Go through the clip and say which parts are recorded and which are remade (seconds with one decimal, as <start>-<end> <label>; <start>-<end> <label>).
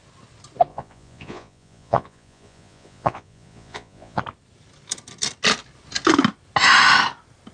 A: 0.0-0.7 recorded; 0.7-4.2 remade; 4.2-7.5 recorded